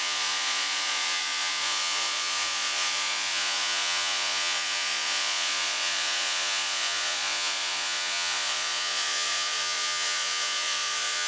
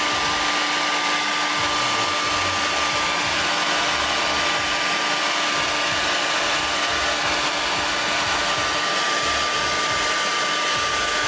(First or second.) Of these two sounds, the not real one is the first